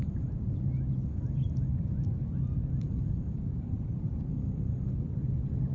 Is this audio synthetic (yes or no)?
yes